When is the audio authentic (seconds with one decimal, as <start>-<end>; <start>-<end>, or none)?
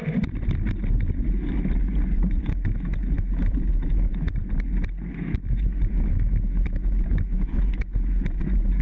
0.0-2.4; 4.4-5.1